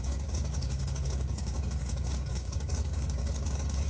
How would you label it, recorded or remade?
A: remade